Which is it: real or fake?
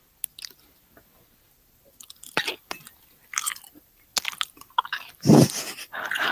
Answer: real